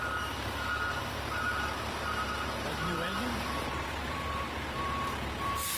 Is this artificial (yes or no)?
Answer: yes